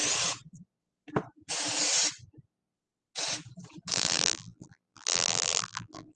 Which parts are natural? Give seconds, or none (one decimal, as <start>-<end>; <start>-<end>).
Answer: 0.0-3.9